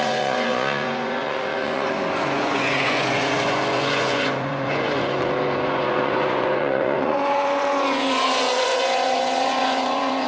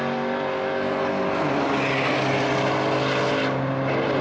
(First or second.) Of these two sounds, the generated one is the first